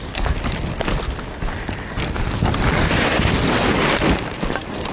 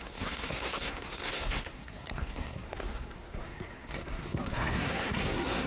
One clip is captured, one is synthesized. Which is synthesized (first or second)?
second